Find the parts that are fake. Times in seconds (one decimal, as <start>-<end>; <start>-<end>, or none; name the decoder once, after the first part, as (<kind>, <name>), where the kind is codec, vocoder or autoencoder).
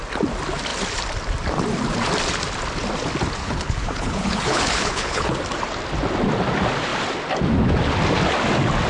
3.4-5.3 (codec, HILCodec)